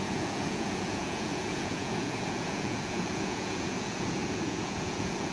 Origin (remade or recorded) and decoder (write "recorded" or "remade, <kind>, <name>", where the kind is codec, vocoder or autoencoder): remade, vocoder, Vocos